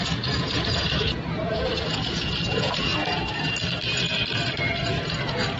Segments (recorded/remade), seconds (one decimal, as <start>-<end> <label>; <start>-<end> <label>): 0.0-2.9 remade; 2.9-4.7 recorded; 4.7-5.6 remade